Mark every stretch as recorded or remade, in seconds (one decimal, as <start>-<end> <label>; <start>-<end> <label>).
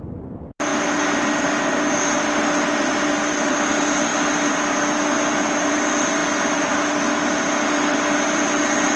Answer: 0.0-9.0 recorded